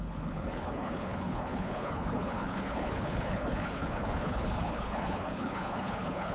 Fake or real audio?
fake